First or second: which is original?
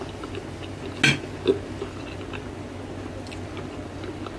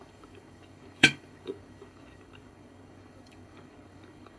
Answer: first